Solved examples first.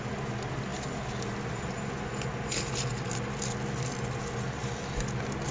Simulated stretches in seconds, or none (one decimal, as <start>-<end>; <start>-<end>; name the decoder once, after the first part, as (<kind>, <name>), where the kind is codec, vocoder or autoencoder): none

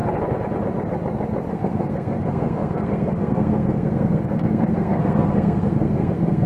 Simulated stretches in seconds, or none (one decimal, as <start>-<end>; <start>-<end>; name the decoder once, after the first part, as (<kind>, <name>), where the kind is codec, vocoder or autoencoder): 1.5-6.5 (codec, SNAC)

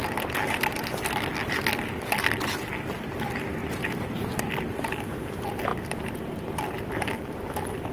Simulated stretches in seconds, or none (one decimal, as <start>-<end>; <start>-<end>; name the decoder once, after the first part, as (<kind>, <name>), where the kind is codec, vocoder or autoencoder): 3.6-4.3 (vocoder, BigVGAN v2)